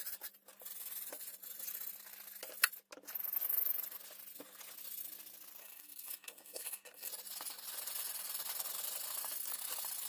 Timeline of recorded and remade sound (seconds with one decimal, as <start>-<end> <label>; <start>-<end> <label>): 0.0-5.6 recorded; 5.6-7.1 remade; 7.1-10.1 recorded